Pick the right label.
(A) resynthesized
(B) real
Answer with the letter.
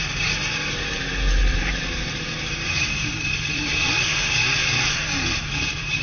A